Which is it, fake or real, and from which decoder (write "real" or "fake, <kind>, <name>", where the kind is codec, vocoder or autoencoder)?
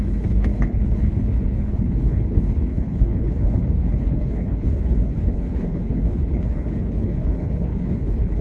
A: fake, codec, HILCodec